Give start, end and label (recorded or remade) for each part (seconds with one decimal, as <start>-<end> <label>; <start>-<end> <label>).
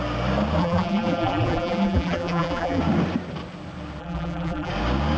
0.0-0.6 recorded; 0.6-2.8 remade; 2.8-4.0 recorded; 4.0-4.7 remade; 4.7-5.2 recorded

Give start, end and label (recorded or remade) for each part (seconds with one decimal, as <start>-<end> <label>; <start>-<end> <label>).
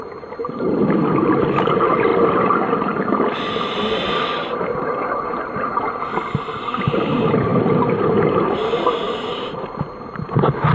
0.0-7.5 recorded; 7.5-8.1 remade; 8.1-10.7 recorded